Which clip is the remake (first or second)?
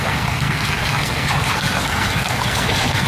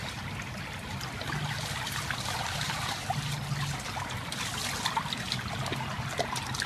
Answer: first